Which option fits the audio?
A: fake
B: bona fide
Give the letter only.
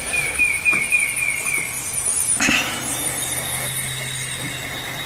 B